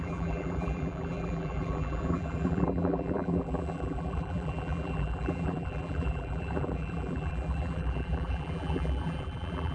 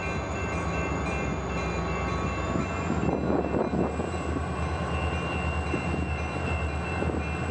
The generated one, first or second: first